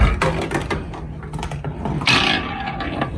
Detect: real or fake real